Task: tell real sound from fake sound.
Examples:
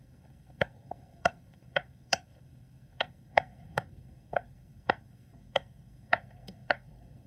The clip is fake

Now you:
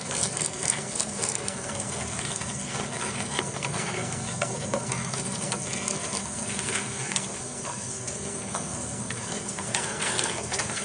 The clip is fake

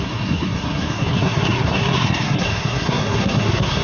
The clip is fake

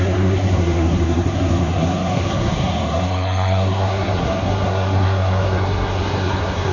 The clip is fake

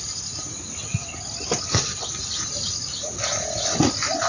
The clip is real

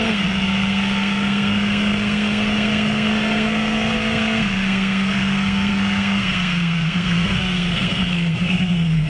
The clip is fake